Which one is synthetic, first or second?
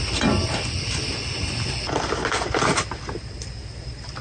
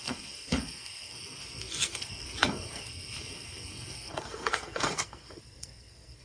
second